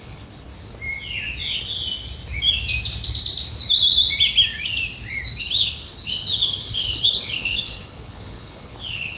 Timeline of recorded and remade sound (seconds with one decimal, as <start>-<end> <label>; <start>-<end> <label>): 0.0-0.5 remade; 0.5-5.4 recorded; 5.4-9.2 remade